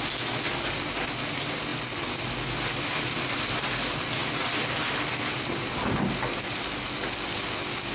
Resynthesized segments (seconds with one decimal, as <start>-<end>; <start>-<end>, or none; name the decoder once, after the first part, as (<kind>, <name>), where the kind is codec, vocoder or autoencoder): none